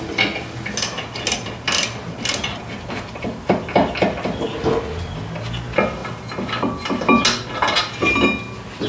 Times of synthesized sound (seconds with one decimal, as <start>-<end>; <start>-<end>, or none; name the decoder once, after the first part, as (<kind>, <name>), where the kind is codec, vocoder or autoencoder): none

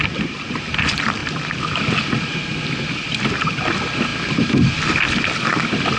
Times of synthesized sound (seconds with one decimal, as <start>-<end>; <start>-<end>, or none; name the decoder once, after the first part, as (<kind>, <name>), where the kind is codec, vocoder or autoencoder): none

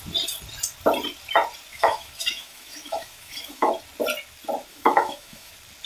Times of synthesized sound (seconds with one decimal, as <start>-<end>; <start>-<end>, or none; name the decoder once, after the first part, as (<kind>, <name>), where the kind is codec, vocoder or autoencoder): 1.7-3.7 (autoencoder, DAC-VAE); 4.7-5.5

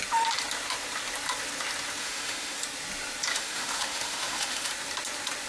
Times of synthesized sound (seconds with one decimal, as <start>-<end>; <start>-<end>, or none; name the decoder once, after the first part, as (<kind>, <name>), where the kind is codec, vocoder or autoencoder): 2.0-2.6 (autoencoder, DAC-VAE); 3.3-4.7

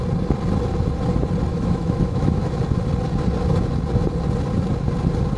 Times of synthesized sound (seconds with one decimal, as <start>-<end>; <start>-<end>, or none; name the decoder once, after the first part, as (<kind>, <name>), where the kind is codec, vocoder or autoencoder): 1.5-2.6 (autoencoder, DAC-VAE)

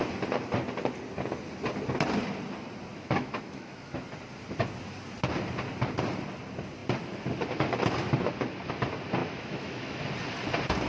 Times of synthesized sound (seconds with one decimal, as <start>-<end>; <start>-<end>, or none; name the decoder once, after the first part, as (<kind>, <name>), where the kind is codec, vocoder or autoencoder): 2.9-3.9 (autoencoder, DAC-VAE); 9.2-10.0

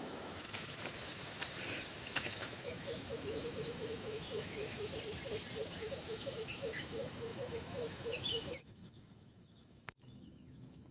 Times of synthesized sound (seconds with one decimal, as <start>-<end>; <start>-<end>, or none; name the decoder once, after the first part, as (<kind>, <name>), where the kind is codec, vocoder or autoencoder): 0.0-1.4 (autoencoder, DAC-VAE); 2.0-4.9; 5.8-10.9